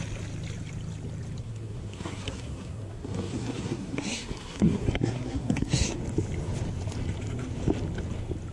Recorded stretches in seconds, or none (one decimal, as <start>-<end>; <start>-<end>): 0.0-1.4; 6.0-8.5